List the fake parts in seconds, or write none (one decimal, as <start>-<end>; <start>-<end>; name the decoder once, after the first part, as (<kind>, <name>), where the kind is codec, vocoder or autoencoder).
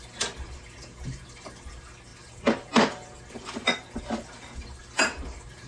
none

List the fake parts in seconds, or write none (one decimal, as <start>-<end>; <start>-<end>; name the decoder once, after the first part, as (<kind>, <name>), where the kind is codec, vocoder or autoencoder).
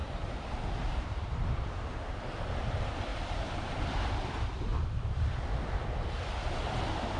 0.0-2.0 (vocoder, BigVGAN v2); 3.1-4.1; 4.7-5.3